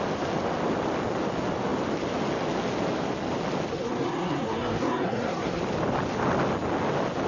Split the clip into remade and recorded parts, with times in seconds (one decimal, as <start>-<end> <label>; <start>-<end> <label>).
0.0-3.7 recorded; 3.7-5.6 remade; 5.6-7.3 recorded